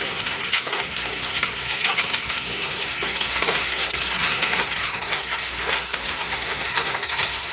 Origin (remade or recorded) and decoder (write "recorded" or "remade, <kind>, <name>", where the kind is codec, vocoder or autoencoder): remade, codec, SNAC